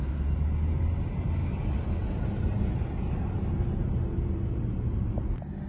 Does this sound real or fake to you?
real